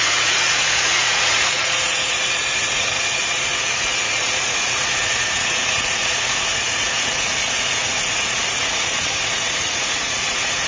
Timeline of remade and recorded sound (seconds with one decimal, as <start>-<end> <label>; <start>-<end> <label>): 0.0-10.7 remade